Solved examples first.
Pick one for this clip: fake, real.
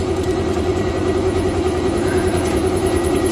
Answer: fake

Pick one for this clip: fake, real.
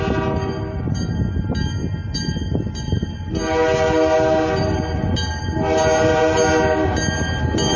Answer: real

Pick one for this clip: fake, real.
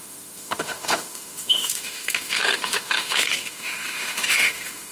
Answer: fake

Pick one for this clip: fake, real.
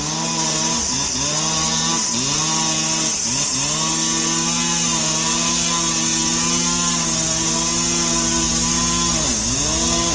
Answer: real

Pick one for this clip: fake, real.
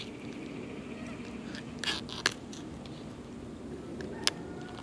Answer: real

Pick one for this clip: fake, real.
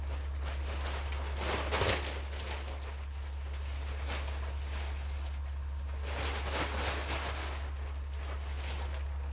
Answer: real